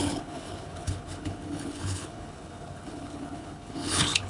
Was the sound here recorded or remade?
remade